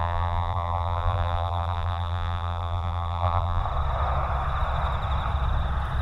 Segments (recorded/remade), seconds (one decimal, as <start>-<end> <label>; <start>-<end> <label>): 0.0-3.6 remade; 3.6-6.0 recorded